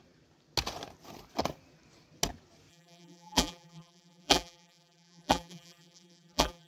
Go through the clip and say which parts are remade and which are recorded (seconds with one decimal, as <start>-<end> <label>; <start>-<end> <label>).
0.0-2.7 recorded; 2.7-6.7 remade

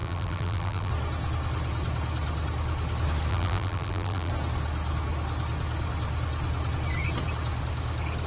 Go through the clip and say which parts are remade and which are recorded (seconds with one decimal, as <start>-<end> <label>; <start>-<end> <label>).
0.0-0.9 remade; 0.9-3.3 recorded; 3.3-4.3 remade; 4.3-8.3 recorded

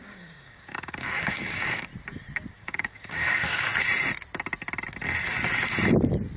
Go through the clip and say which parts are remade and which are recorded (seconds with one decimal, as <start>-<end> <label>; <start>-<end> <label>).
0.0-1.9 remade; 1.9-2.5 recorded; 2.5-3.7 remade; 3.7-6.4 recorded

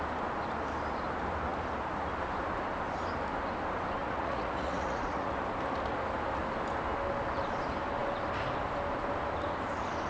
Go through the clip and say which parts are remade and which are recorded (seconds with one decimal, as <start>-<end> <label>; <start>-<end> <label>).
0.0-4.0 recorded; 4.0-5.3 remade; 5.3-10.1 recorded

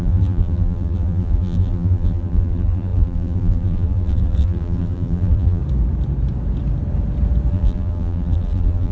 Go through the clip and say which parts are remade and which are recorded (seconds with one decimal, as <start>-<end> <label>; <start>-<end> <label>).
0.0-5.6 remade; 5.6-7.5 recorded; 7.5-8.9 remade